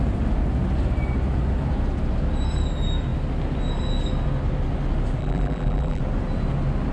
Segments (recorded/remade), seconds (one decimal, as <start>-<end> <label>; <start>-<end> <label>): 0.0-5.2 recorded; 5.2-6.0 remade; 6.0-6.9 recorded